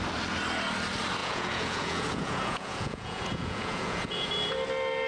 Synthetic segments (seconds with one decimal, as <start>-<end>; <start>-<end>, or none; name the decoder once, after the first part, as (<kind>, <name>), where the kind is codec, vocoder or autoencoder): 1.2-4.3 (vocoder, Vocos)